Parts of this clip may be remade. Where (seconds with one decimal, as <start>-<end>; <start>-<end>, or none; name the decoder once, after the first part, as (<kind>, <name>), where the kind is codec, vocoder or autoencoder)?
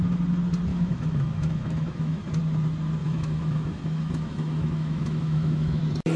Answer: 0.7-2.4 (autoencoder, DAC-VAE); 3.0-5.8